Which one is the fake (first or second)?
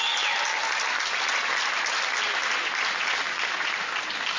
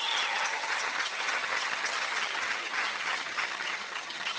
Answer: second